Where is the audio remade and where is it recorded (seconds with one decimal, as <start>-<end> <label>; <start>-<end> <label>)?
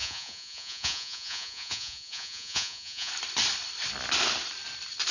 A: 0.0-3.1 remade; 3.1-5.1 recorded